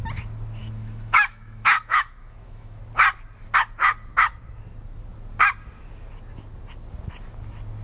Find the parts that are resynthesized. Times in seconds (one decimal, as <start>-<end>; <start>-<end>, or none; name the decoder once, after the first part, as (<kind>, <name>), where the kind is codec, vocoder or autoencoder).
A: 0.6-2.8 (autoencoder, DAC-VAE)